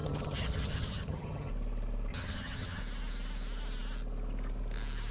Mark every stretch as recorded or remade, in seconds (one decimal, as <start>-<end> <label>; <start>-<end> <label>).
0.0-1.5 remade; 1.5-2.1 recorded; 2.1-2.8 remade; 2.8-5.1 recorded